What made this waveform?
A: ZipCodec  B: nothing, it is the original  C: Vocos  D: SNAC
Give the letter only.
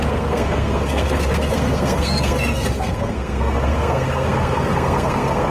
D